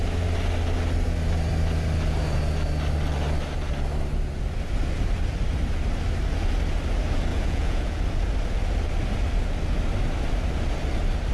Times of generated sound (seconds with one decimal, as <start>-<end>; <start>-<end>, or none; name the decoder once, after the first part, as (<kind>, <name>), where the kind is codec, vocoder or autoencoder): 7.3-8.0 (vocoder, Vocos)